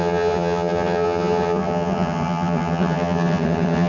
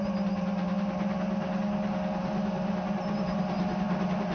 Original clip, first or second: second